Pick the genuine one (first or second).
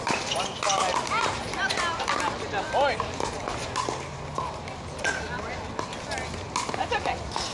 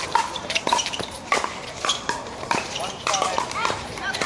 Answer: first